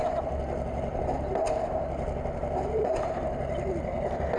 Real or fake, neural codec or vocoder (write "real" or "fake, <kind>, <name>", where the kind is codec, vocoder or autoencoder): real